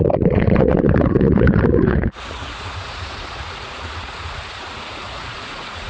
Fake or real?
fake